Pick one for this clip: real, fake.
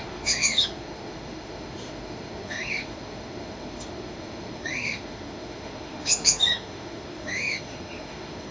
fake